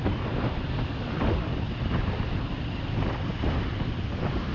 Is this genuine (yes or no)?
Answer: yes